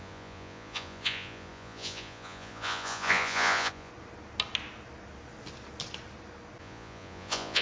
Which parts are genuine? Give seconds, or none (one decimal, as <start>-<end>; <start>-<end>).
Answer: 3.9-6.6